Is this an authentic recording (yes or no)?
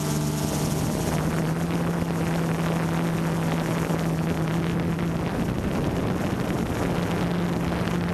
yes